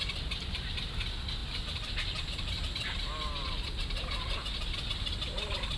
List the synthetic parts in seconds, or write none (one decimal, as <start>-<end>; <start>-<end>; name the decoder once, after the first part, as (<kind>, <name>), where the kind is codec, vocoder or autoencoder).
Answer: none